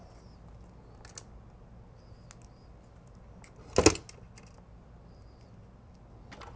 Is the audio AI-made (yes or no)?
no